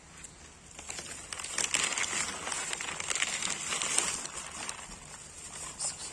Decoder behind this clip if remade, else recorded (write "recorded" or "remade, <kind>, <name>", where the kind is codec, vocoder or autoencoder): recorded